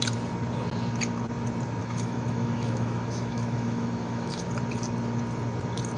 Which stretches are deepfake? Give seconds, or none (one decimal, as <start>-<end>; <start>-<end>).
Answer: 1.8-4.4